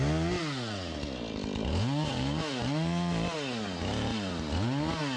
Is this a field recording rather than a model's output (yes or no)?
yes